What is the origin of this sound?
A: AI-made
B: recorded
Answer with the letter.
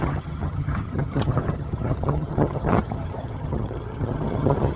A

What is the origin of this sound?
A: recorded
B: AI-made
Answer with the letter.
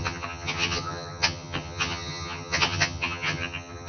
B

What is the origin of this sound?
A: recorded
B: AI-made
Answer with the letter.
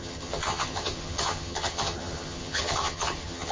B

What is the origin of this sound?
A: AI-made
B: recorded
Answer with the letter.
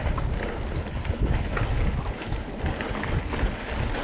B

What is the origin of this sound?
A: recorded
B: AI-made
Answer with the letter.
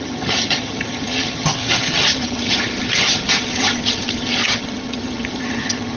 B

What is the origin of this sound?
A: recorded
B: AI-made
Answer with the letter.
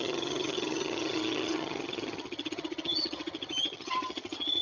B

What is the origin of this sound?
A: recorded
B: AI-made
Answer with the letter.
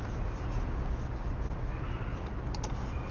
A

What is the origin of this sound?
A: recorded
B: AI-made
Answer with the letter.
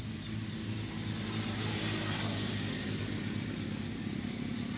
A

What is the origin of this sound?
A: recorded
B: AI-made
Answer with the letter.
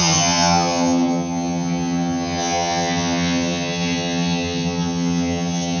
B